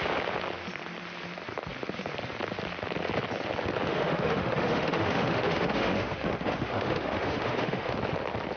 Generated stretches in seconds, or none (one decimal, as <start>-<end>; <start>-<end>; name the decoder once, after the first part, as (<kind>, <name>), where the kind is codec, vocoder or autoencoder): 3.9-8.0 (autoencoder, DAC-VAE)

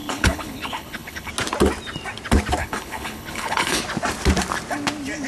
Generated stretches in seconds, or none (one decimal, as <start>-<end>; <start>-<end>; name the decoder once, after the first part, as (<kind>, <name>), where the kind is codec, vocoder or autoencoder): 0.0-1.3 (codec, HILCodec); 2.6-3.8

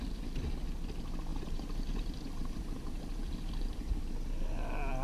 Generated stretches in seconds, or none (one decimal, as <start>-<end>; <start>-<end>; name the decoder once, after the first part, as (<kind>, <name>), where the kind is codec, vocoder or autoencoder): 1.3-4.0 (vocoder, BigVGAN v2)

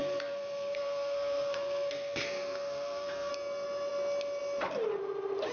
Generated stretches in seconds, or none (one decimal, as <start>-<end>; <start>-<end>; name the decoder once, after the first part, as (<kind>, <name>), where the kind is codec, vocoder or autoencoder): 0.0-3.3 (codec, SNAC)

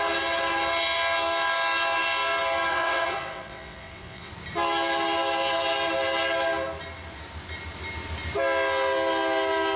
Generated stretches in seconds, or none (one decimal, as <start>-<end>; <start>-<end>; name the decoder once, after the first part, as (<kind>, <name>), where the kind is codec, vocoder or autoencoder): 2.7-4.3 (vocoder, WaveNeXt)

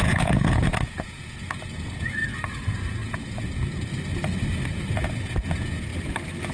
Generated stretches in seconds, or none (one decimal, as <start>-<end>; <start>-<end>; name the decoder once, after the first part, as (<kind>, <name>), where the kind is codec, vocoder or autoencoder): 0.0-3.9 (vocoder, Vocos); 4.7-5.9

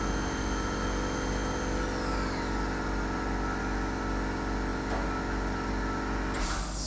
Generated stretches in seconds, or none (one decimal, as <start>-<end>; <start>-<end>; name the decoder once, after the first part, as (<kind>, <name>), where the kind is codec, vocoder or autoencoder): none